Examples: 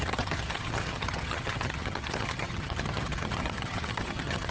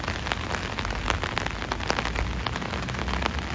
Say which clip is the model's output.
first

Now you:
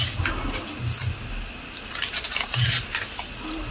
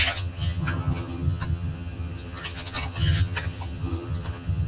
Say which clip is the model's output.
second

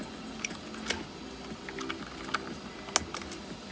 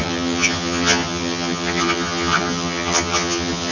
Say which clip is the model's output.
second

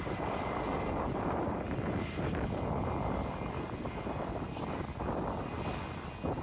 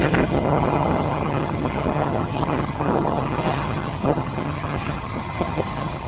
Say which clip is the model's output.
second